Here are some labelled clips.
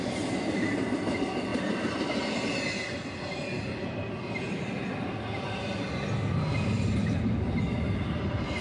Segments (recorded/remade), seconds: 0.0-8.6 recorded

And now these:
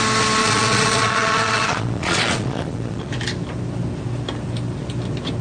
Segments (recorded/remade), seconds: 0.0-0.4 recorded; 0.4-3.1 remade; 3.1-5.4 recorded

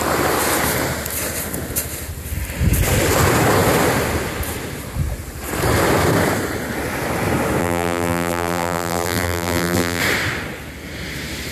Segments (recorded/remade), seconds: 0.0-7.6 recorded; 7.6-10.0 remade; 10.0-11.5 recorded

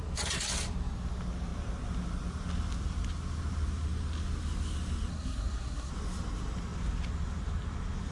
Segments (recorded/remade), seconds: 0.0-5.1 recorded; 5.1-5.9 remade; 5.9-8.1 recorded

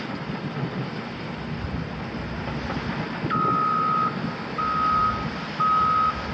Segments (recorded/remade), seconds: 0.0-6.3 recorded